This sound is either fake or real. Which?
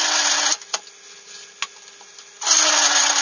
real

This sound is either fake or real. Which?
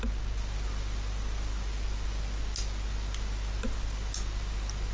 real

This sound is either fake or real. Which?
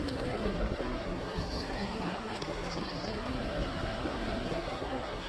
fake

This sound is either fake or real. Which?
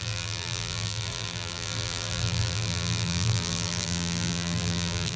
fake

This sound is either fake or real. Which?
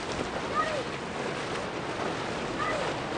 real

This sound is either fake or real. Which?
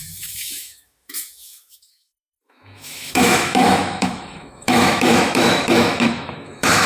fake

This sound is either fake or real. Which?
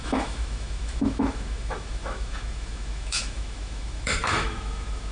fake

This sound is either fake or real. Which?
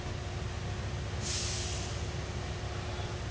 real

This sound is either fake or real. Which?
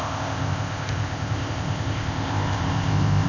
fake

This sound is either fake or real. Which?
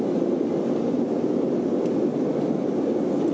real